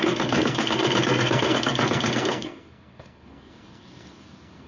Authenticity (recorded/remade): remade